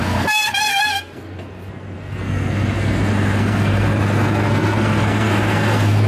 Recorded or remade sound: remade